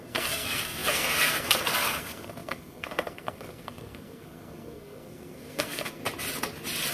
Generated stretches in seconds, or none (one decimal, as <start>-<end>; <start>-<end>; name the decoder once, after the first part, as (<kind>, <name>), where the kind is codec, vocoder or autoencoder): 0.0-6.0 (codec, SNAC)